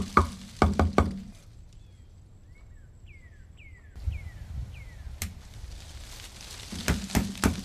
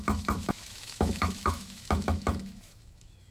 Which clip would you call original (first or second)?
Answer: first